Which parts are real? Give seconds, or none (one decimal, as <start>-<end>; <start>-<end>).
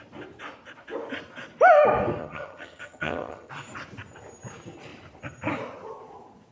0.0-2.2; 3.5-6.5